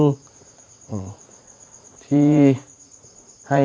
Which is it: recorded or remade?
remade